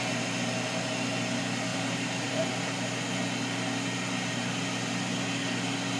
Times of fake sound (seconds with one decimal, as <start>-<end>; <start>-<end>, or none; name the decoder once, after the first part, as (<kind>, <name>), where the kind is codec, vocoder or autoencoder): 1.7-2.3 (vocoder, BigVGAN v2)